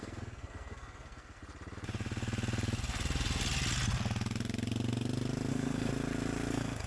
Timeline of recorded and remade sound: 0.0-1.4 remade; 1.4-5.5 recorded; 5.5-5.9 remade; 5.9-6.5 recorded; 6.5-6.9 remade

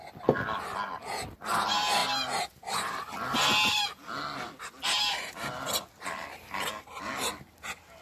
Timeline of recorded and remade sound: 0.0-8.0 recorded

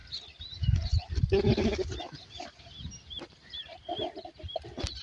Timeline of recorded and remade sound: 0.0-5.0 recorded

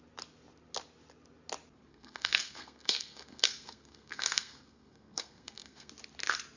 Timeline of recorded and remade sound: 0.0-1.9 recorded; 1.9-5.9 remade; 5.9-6.6 recorded

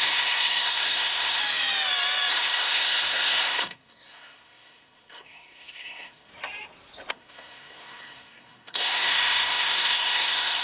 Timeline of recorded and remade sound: 0.0-1.4 remade; 1.4-2.3 recorded; 2.3-6.3 remade; 6.3-7.1 recorded; 7.1-10.6 remade